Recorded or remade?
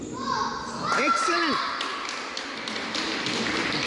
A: recorded